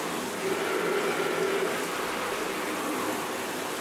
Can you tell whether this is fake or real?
real